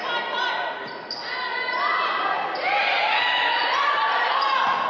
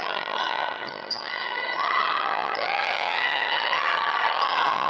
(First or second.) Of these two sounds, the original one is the first